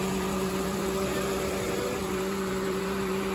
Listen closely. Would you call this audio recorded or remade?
remade